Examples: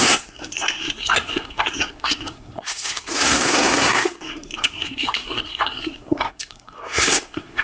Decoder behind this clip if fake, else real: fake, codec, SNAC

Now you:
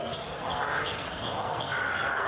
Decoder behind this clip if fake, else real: fake, codec, SNAC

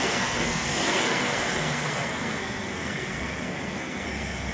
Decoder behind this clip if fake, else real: fake, codec, SNAC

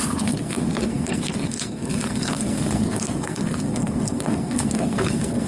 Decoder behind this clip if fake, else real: fake, codec, SNAC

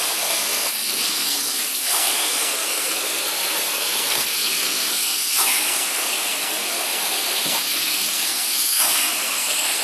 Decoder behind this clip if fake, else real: fake, codec, SNAC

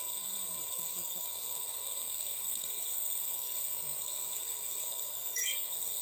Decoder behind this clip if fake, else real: fake, codec, SNAC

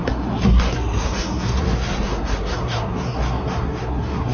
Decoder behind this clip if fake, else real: fake, codec, SNAC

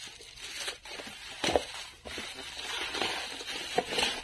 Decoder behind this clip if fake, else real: real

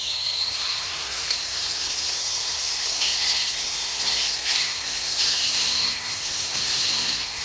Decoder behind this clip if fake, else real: fake, codec, SNAC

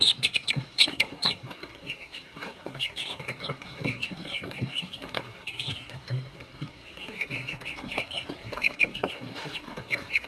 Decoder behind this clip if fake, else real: fake, codec, SNAC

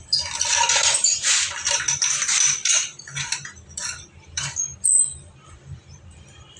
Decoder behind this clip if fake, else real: real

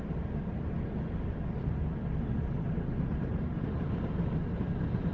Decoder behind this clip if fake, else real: real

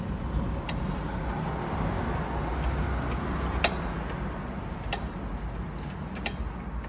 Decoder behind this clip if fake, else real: real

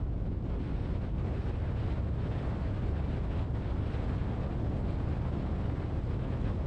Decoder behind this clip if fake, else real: real